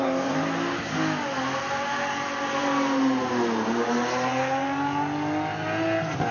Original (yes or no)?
yes